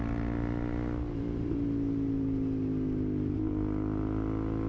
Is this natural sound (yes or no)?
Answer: yes